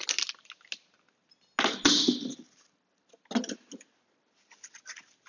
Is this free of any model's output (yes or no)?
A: yes